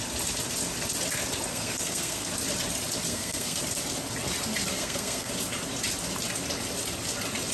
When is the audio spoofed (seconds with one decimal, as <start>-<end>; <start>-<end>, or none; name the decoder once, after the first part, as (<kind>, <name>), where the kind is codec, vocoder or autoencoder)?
1.5-2.3 (codec, SNAC); 3.1-3.6; 4.7-5.3